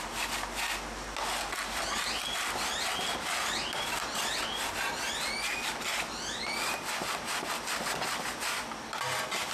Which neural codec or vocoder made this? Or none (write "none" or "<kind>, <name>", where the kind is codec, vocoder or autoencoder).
none